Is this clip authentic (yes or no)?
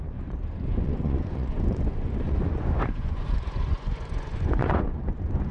no